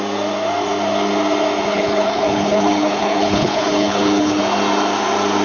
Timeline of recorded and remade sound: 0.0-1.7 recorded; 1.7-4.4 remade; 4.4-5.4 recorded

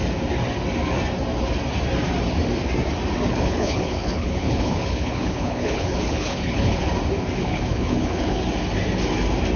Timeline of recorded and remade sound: 0.0-3.3 recorded; 3.3-6.9 remade; 6.9-7.4 recorded; 7.4-8.4 remade; 8.4-9.6 recorded

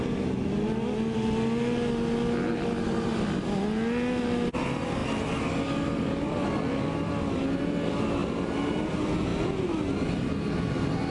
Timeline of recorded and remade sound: 0.0-11.1 recorded